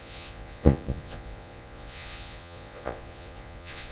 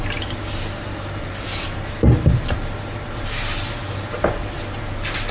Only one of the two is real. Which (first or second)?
second